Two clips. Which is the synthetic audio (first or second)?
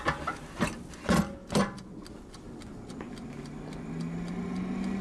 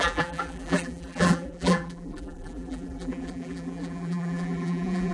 second